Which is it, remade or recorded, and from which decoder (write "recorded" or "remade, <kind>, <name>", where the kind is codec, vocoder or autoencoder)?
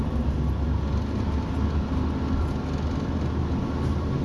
recorded